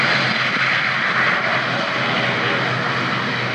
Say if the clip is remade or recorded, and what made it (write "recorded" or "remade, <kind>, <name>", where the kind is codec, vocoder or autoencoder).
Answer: recorded